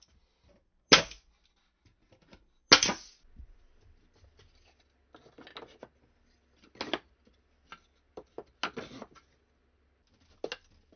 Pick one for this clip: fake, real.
real